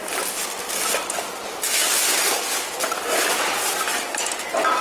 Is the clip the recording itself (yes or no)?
yes